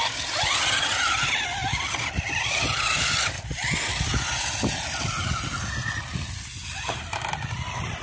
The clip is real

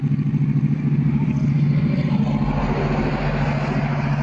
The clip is real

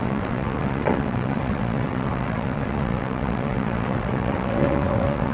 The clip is fake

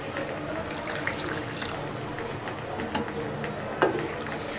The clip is real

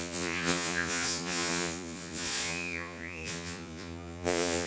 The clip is fake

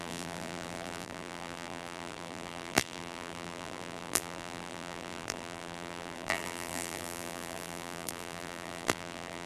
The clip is fake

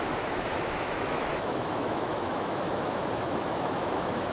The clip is fake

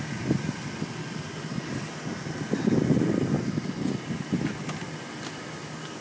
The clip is real